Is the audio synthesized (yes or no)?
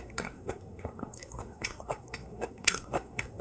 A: yes